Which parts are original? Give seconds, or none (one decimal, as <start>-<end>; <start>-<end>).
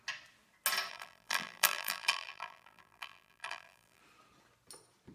0.0-0.9; 4.0-5.1